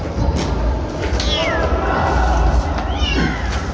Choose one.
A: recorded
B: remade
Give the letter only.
A